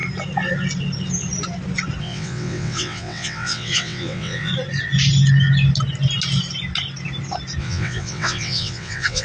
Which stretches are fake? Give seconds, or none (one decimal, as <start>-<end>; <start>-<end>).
2.0-4.5; 7.6-9.2